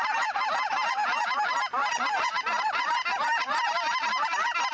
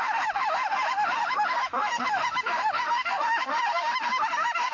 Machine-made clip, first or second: second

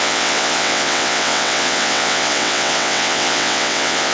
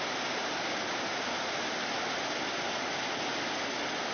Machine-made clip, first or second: first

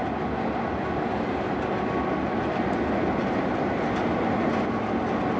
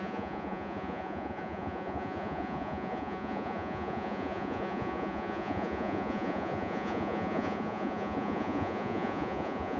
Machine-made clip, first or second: second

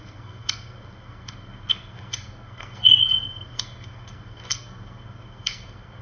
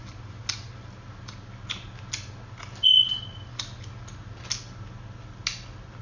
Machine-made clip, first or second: first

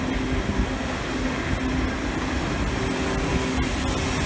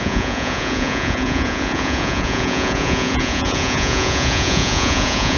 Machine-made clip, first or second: second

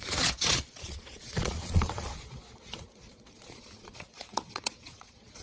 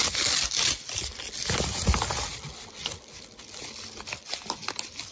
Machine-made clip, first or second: first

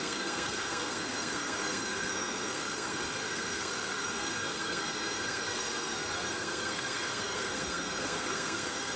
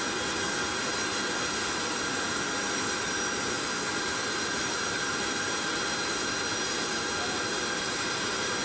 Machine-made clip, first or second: first